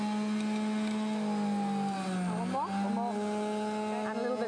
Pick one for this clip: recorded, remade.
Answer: recorded